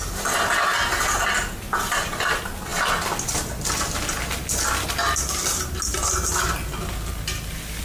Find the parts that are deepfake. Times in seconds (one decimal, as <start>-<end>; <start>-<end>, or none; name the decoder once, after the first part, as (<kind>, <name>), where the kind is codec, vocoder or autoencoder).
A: none